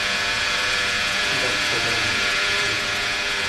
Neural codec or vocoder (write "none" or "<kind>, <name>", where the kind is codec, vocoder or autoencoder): vocoder, Vocos